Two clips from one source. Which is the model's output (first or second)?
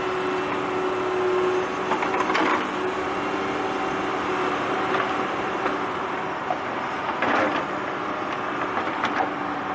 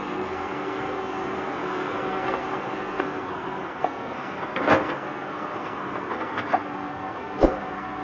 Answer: second